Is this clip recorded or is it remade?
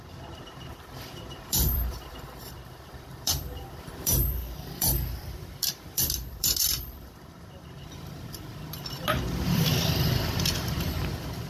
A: remade